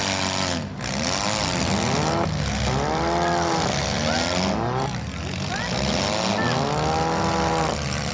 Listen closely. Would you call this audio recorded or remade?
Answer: recorded